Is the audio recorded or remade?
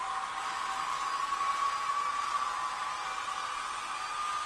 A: recorded